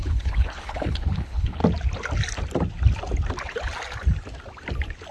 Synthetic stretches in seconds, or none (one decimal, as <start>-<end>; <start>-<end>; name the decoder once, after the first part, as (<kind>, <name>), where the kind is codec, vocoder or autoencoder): 0.0-1.6 (codec, HILCodec)